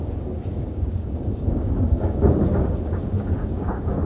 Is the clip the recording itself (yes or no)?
no